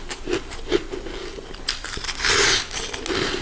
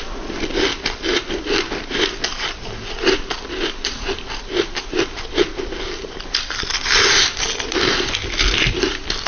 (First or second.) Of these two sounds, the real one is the first